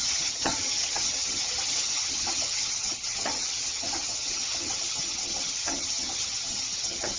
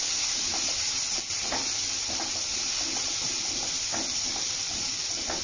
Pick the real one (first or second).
second